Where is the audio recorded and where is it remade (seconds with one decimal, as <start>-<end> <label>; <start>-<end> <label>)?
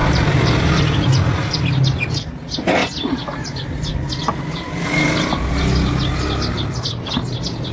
0.0-0.8 remade; 0.8-7.7 recorded